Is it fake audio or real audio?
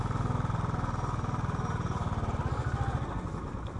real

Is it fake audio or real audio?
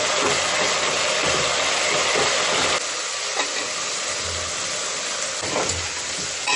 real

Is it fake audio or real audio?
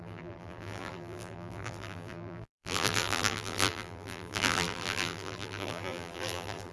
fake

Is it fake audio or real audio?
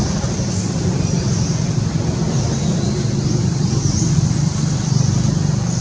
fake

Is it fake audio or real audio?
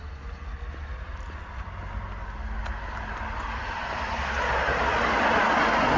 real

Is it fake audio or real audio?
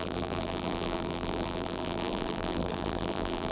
fake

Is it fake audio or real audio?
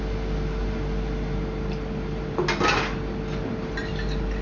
real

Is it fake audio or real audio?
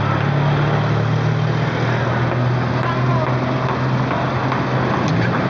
real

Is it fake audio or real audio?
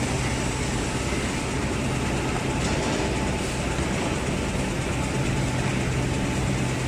real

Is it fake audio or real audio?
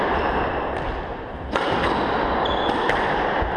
real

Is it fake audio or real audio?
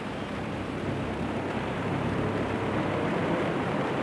fake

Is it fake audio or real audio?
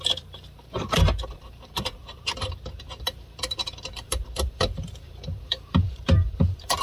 fake